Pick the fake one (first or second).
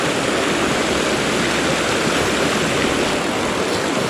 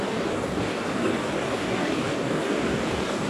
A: second